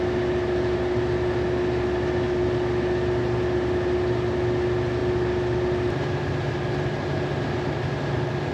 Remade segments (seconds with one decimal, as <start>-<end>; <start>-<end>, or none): none